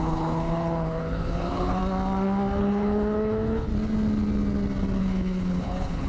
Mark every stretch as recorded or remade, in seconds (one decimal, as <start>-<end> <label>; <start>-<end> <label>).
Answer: 0.0-1.8 remade; 1.8-2.6 recorded; 2.6-3.7 remade; 3.7-5.0 recorded; 5.0-6.1 remade